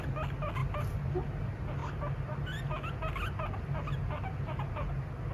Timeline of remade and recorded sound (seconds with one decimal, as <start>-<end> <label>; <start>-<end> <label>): 0.0-5.3 recorded